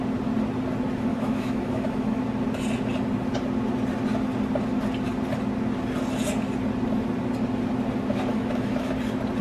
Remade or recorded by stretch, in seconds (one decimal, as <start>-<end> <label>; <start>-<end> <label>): 0.0-1.1 recorded; 1.1-2.2 remade; 2.2-8.3 recorded; 8.3-8.9 remade; 8.9-9.4 recorded